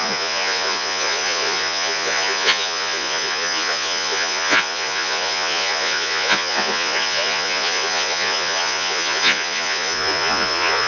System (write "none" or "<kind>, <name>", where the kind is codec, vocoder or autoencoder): vocoder, Vocos